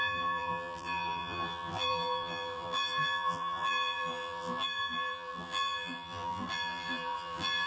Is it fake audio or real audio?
fake